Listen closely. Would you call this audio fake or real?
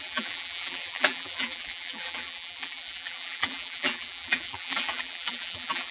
fake